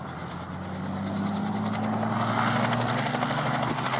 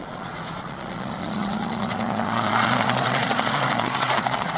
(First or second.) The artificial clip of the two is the second